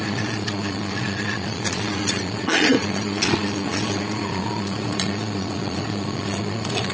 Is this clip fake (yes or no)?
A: yes